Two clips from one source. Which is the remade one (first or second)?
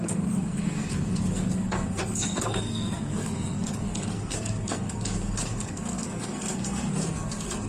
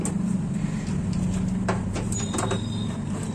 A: first